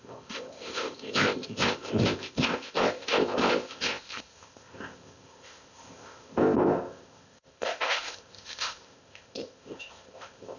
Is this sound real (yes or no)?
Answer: no